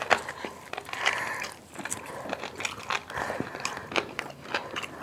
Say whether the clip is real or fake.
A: fake